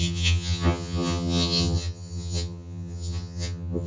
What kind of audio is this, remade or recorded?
remade